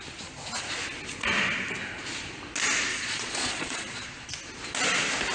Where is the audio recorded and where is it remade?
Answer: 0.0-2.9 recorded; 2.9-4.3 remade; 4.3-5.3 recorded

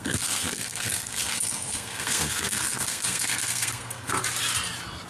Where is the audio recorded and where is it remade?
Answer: 0.0-4.2 remade; 4.2-5.1 recorded